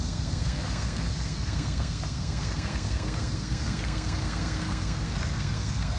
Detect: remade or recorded remade